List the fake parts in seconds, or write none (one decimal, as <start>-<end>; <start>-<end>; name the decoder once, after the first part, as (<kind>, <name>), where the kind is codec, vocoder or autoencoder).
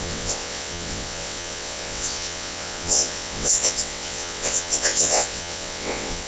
0.0-6.3 (vocoder, WaveNeXt)